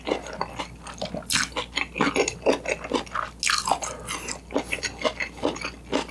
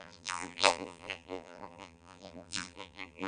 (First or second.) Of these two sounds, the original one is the first